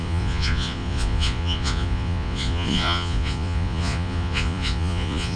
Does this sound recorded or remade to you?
remade